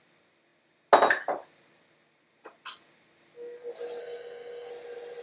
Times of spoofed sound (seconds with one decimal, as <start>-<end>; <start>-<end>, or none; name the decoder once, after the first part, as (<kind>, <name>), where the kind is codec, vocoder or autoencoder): 4.0-4.7 (codec, SNAC)